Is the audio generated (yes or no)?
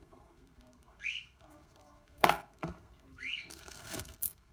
yes